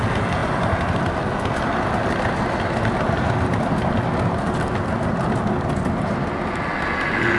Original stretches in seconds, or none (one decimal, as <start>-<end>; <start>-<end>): 0.0-7.4